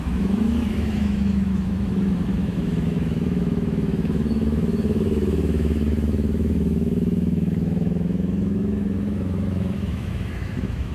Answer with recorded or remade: remade